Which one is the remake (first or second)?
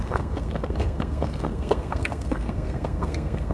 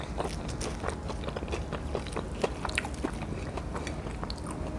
first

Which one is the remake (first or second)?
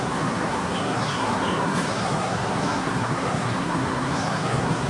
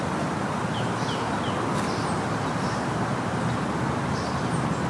first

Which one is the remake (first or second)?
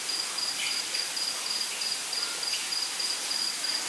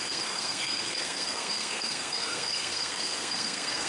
second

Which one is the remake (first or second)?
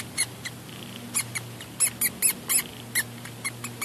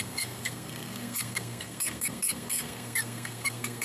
second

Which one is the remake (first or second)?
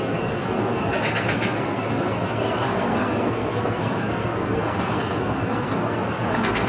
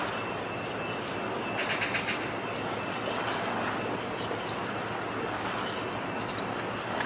first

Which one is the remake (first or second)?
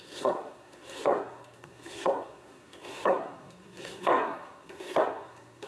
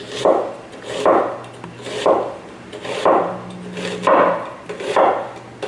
first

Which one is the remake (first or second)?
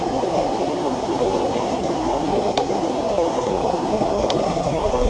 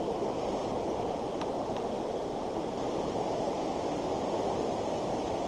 first